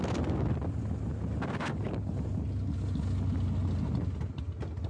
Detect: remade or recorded recorded